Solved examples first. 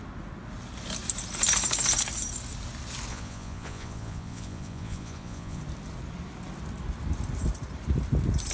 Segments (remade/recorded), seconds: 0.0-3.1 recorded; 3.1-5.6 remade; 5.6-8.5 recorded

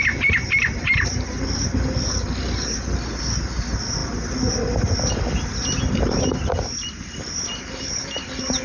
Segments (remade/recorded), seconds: 0.0-8.6 recorded

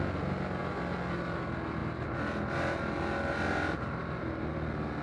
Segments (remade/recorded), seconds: 0.0-5.0 recorded